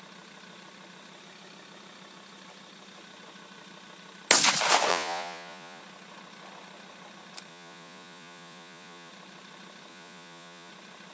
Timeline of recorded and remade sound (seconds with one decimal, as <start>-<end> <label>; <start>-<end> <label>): 0.0-4.9 recorded; 4.9-5.8 remade; 5.8-7.5 recorded; 7.5-9.1 remade; 9.1-9.9 recorded; 9.9-10.7 remade; 10.7-11.1 recorded